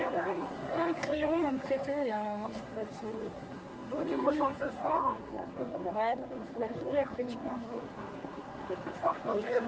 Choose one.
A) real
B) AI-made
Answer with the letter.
B